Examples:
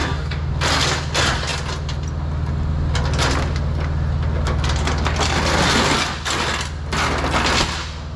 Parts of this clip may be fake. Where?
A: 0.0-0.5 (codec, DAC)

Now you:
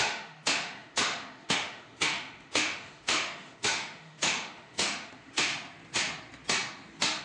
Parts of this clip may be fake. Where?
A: 0.0-5.5 (autoencoder, DAC-VAE)

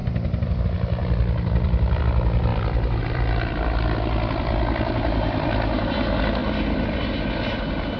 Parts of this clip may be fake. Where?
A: 0.0-0.6 (vocoder, BigVGAN v2); 1.0-2.0; 2.5-5.9

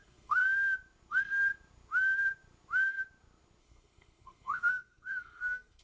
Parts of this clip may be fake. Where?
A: 0.0-0.4 (codec, SNAC); 1.1-1.5; 3.6-5.8

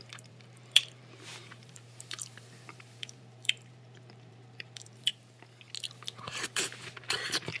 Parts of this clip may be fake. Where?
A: 0.0-5.1 (vocoder, BigVGAN v2); 5.9-7.6